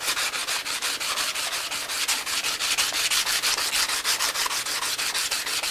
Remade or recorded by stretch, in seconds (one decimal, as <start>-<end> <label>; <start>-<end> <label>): 0.0-0.4 recorded; 0.4-1.5 remade; 1.5-5.7 recorded